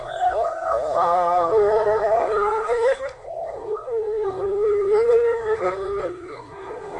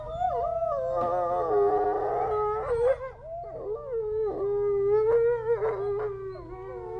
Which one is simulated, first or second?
first